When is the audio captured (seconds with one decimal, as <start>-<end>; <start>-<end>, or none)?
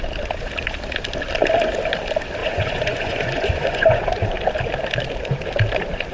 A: 0.0-2.4; 4.1-6.1